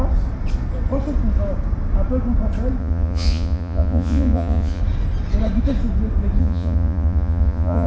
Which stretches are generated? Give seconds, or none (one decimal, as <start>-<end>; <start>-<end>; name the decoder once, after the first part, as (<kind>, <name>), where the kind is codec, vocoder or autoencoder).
2.8-4.8 (vocoder, Vocos); 6.4-7.9